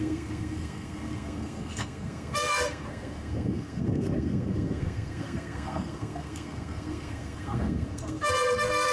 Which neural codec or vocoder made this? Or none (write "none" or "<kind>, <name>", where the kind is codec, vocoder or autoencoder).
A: codec, SNAC